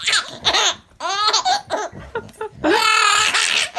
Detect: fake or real real